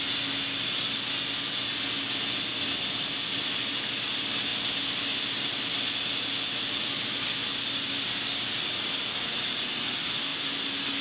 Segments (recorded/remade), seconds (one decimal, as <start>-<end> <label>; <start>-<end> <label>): 0.0-11.0 recorded